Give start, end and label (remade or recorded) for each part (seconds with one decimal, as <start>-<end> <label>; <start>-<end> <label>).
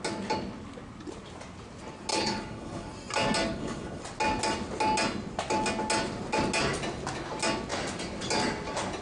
0.0-2.1 recorded; 2.1-2.9 remade; 2.9-3.5 recorded; 3.5-4.0 remade; 4.0-9.0 recorded